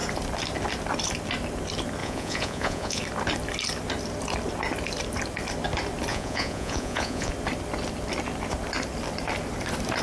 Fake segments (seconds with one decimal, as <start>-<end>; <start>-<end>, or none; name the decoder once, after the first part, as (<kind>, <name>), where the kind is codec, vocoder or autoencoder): 2.0-3.0 (vocoder, Vocos); 6.1-7.3